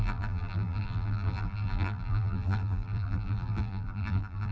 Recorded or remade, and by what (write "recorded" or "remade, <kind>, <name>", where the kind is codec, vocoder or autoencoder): remade, vocoder, BigVGAN v2